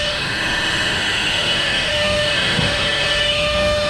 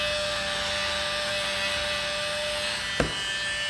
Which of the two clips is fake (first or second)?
first